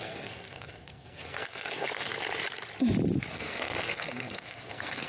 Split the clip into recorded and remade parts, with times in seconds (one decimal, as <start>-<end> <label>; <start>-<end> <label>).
0.0-2.1 remade; 2.1-3.3 recorded; 3.3-5.1 remade

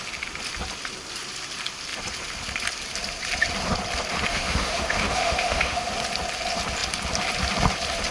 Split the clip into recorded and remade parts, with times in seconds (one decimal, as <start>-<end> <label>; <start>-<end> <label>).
0.0-4.3 recorded; 4.3-5.9 remade; 5.9-8.1 recorded